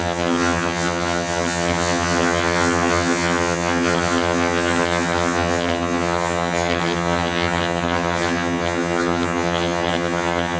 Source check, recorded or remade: remade